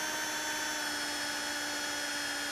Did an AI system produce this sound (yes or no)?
no